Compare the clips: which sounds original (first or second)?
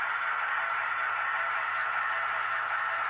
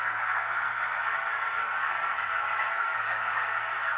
first